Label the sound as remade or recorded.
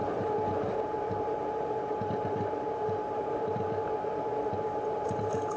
remade